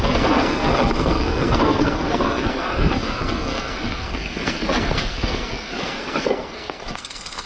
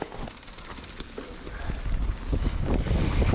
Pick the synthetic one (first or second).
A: first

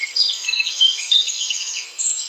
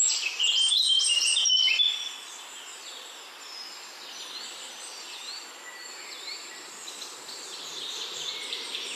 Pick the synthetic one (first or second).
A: first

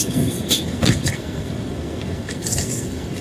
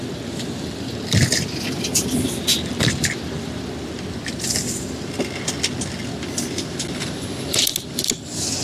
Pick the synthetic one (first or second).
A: first